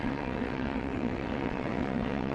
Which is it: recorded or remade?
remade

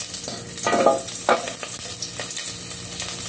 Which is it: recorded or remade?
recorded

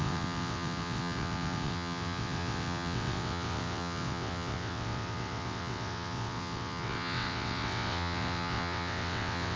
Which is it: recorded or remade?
remade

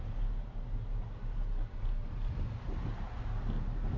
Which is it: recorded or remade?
recorded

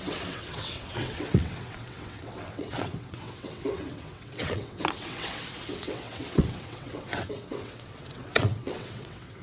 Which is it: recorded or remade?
remade